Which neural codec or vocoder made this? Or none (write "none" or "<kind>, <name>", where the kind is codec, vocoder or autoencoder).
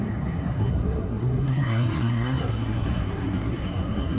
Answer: codec, SNAC